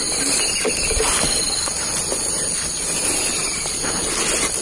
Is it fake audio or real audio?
real